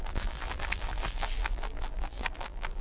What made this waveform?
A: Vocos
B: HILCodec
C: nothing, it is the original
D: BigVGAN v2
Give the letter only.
D